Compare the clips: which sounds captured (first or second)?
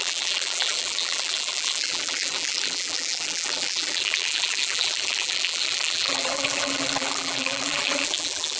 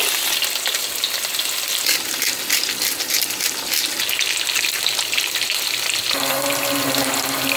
second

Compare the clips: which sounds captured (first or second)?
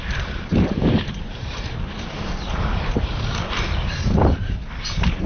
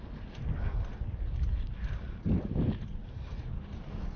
second